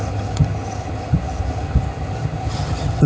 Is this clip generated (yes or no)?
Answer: yes